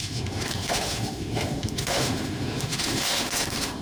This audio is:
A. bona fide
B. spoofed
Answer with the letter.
B